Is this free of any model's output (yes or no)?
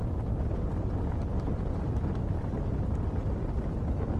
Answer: yes